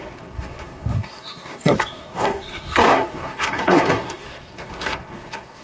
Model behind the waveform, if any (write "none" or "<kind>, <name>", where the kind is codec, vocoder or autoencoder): codec, SNAC